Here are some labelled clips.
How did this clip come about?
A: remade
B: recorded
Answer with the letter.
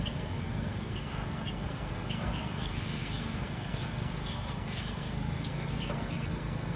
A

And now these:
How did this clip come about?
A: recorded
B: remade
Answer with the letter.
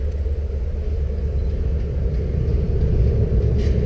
A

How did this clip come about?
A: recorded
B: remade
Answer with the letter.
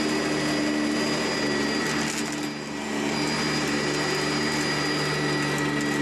A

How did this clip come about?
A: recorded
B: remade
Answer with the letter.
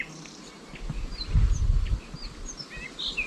A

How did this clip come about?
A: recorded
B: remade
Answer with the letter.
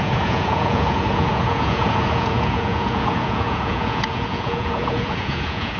B